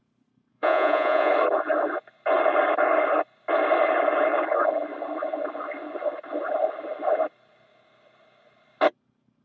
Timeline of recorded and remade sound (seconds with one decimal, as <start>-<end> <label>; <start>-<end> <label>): 0.0-0.5 recorded; 0.5-1.3 remade; 1.3-9.4 recorded